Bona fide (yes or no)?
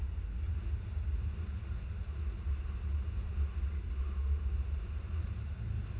yes